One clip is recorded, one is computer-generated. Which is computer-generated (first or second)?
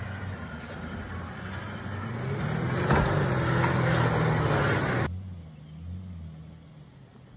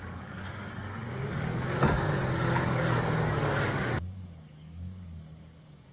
second